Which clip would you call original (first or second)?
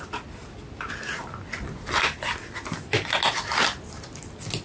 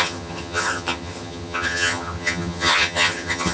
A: first